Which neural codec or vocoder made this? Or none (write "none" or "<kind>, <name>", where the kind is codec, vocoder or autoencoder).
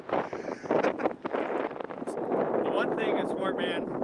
none